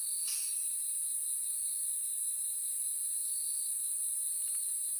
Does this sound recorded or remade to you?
recorded